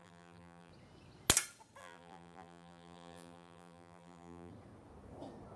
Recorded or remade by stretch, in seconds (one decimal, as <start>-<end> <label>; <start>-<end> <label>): 0.0-0.7 remade; 0.7-1.8 recorded; 1.8-4.5 remade; 4.5-5.6 recorded